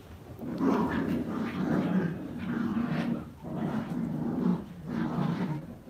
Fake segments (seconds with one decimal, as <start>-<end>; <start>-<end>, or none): 0.0-2.7; 3.4-4.5; 5.2-5.9